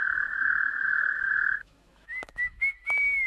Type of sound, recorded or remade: remade